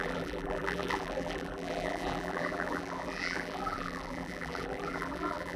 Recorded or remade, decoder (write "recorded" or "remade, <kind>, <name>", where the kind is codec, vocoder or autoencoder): remade, vocoder, BigVGAN v2